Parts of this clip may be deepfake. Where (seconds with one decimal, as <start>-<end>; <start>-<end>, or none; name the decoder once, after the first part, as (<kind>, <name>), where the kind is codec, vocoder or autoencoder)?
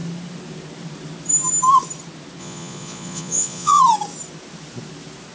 2.4-3.8 (vocoder, Vocos)